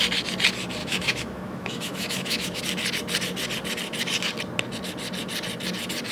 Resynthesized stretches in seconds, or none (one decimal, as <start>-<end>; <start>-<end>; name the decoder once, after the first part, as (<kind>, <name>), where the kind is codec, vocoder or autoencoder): 0.8-2.6 (autoencoder, DAC-VAE)